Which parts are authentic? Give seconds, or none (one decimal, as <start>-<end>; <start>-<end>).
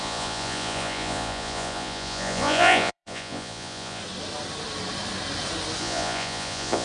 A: 4.0-5.8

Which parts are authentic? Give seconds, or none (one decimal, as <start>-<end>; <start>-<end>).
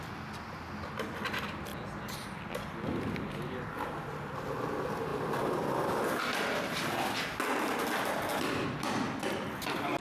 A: 0.0-10.0